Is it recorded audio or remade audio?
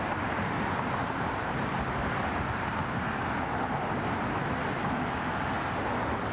recorded